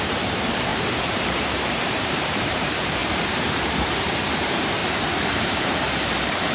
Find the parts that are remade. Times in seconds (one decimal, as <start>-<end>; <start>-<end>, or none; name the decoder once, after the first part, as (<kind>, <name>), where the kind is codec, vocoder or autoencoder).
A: 0.0-4.8 (vocoder, BigVGAN v2); 5.4-6.5